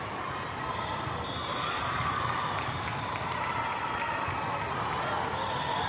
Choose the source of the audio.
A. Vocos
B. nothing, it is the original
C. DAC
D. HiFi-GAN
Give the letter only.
B